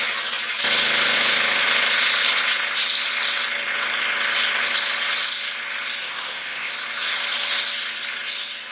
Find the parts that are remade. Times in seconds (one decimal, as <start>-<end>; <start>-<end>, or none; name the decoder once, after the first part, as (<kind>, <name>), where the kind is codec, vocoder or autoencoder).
6.0-6.7 (codec, ZipCodec)